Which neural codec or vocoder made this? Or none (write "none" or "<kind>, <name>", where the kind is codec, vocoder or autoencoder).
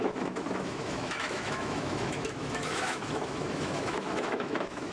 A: autoencoder, DAC-VAE